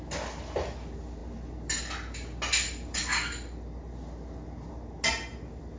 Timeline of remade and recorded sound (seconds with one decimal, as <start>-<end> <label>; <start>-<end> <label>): 0.0-5.8 recorded